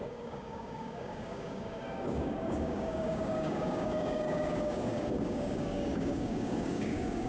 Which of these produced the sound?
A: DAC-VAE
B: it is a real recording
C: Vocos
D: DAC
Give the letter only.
D